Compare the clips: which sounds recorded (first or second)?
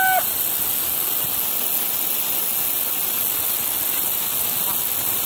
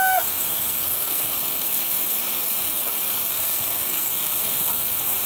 first